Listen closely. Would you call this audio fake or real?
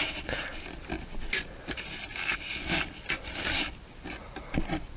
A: real